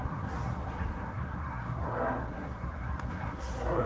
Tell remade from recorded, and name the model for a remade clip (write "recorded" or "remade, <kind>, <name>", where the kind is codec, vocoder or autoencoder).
remade, codec, SNAC